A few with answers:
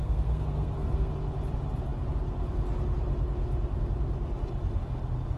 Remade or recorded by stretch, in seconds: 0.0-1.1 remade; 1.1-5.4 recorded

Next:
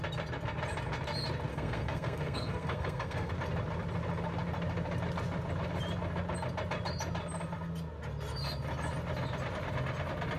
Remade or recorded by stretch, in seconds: 0.0-1.5 recorded; 1.5-3.3 remade; 3.3-10.4 recorded

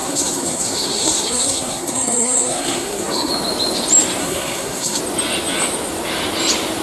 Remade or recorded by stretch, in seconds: 0.0-3.3 remade; 3.3-4.2 recorded; 4.2-5.0 remade; 5.0-6.8 recorded

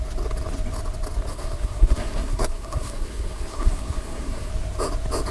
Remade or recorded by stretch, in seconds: 0.0-1.3 recorded; 1.3-4.5 remade; 4.5-5.3 recorded

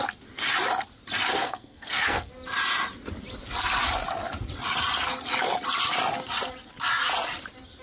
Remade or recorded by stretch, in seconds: 0.0-1.3 recorded; 1.3-2.3 remade; 2.3-7.8 recorded

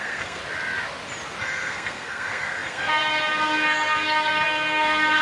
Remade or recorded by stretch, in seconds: 0.0-0.4 remade; 0.4-1.4 recorded; 1.4-5.2 remade

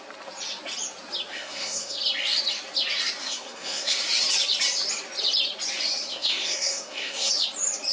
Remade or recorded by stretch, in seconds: 0.0-1.3 recorded; 1.3-2.0 remade; 2.0-3.2 recorded; 3.2-4.0 remade; 4.0-6.1 recorded; 6.1-7.3 remade; 7.3-7.9 recorded